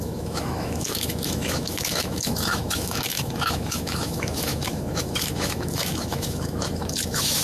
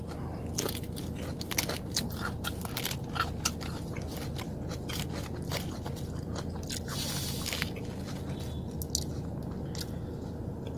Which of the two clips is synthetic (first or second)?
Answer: first